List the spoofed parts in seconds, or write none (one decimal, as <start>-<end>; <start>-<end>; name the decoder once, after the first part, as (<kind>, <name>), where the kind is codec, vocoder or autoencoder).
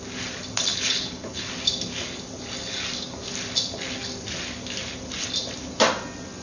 0.7-1.5 (codec, HILCodec)